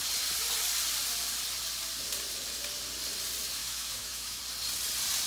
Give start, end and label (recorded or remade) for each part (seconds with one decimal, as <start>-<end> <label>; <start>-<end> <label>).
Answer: 0.0-3.6 recorded; 3.6-4.4 remade; 4.4-5.3 recorded